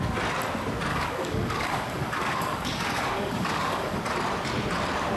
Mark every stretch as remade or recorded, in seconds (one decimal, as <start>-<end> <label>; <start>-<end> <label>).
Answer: 0.0-0.9 recorded; 0.9-4.0 remade; 4.0-5.2 recorded